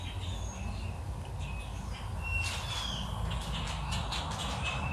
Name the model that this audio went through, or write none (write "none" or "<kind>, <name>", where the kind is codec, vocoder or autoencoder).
none